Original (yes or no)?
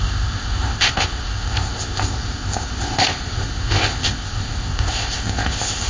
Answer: no